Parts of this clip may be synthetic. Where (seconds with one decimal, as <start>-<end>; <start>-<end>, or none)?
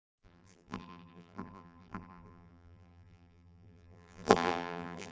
0.0-5.1